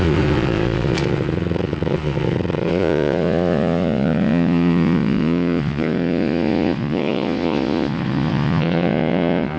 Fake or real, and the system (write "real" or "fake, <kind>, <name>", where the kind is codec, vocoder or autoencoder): fake, vocoder, Vocos